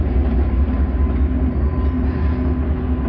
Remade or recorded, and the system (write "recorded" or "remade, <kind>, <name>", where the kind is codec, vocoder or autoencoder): recorded